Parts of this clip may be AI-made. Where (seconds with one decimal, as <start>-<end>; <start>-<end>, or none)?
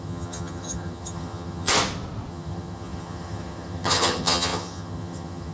0.0-1.7; 2.3-5.5